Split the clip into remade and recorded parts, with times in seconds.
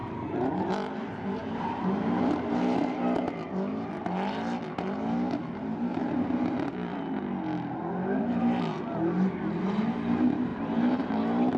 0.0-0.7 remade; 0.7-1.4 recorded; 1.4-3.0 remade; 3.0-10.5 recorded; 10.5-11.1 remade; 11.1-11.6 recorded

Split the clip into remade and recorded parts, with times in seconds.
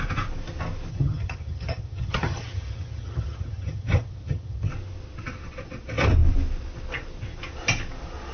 0.0-0.9 recorded; 0.9-4.7 remade; 4.7-8.3 recorded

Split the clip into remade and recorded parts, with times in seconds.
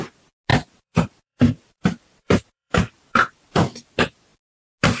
0.0-0.5 recorded; 0.5-3.5 remade; 3.5-5.0 recorded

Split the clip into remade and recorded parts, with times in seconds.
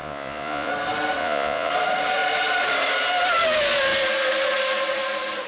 0.0-0.7 remade; 0.7-1.2 recorded; 1.2-1.7 remade; 1.7-5.5 recorded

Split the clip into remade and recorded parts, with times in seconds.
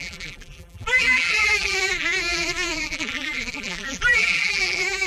0.0-5.1 remade